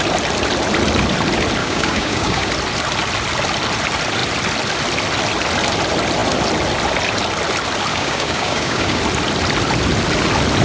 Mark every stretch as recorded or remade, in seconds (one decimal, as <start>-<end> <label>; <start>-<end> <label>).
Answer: 0.0-1.6 recorded; 1.6-2.5 remade; 2.5-7.9 recorded; 7.9-9.0 remade; 9.0-10.6 recorded